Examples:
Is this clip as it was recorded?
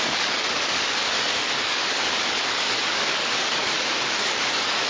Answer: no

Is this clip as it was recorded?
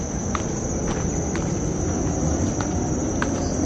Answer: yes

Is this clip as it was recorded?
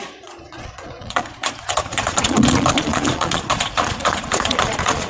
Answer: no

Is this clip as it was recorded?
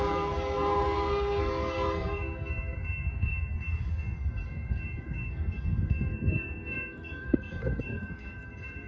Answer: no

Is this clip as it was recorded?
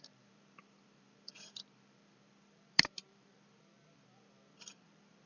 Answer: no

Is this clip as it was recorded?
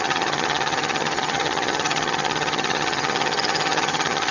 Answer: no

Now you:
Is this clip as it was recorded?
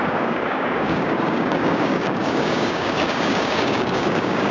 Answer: no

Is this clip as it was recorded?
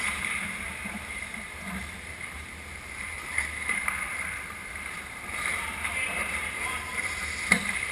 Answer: no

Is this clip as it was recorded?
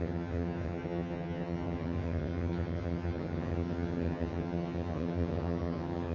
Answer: no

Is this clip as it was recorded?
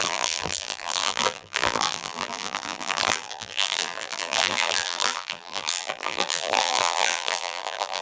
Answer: no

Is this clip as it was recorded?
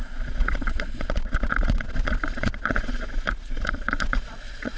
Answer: no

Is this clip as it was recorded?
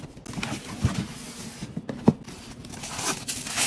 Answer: yes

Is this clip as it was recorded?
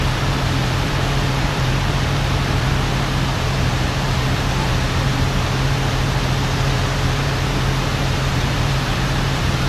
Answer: no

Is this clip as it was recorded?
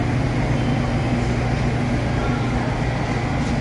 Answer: yes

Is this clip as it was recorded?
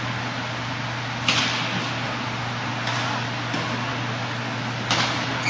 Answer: yes